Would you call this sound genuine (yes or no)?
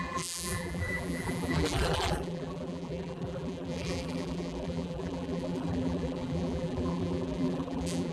no